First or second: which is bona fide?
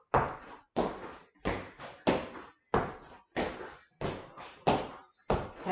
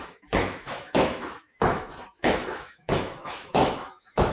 first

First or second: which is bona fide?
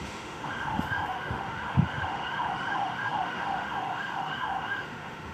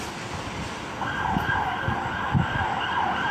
second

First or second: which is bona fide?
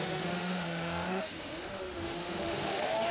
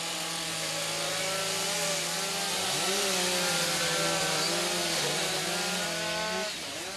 second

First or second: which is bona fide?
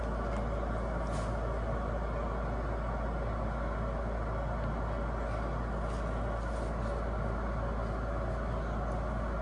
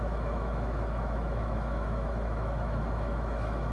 first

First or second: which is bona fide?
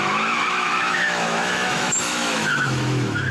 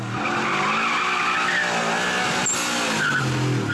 second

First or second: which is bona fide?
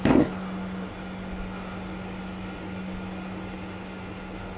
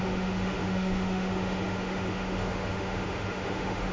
first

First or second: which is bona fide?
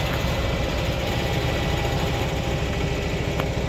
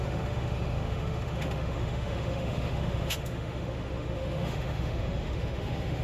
first